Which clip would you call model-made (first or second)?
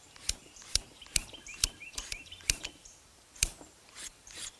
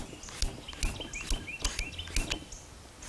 first